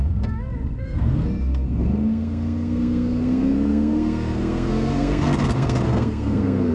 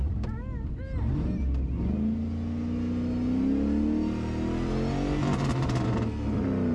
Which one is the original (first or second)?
second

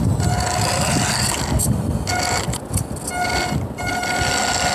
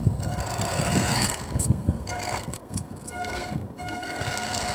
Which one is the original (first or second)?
first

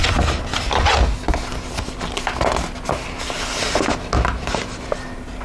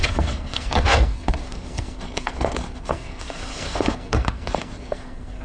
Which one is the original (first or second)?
first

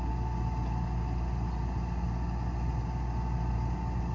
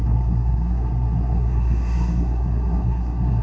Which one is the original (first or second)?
first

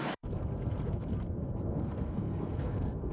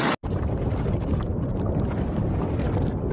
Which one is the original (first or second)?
second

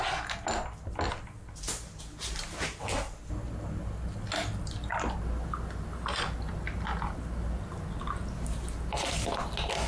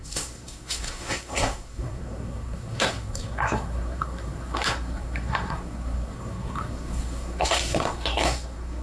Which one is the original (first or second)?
first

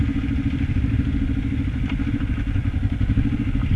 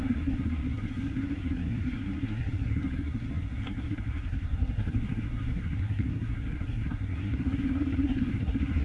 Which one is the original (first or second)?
first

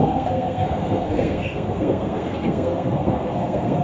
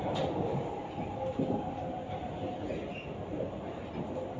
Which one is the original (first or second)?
second